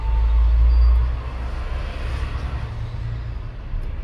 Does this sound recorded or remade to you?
recorded